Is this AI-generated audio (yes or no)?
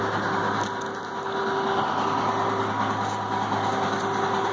no